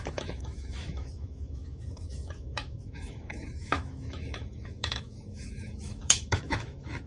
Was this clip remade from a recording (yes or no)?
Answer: yes